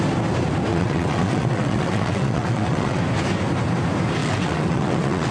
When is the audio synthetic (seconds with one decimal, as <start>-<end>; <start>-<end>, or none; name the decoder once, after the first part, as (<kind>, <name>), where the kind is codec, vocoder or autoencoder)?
0.7-3.0 (vocoder, WaveNeXt); 4.2-5.3